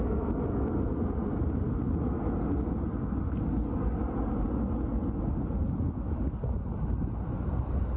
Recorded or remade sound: recorded